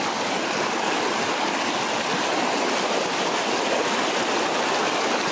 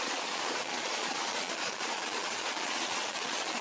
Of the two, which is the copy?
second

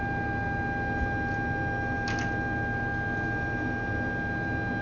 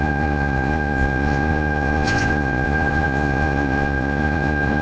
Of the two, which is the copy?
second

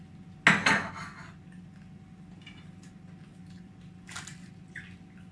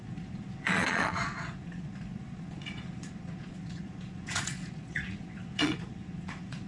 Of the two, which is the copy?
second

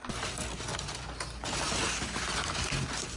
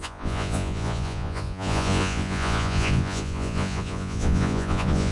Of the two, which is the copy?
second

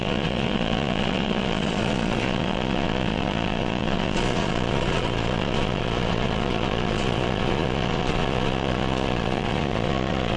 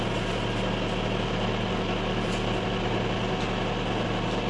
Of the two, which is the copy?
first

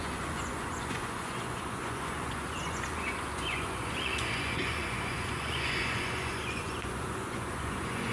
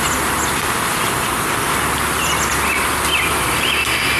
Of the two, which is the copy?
first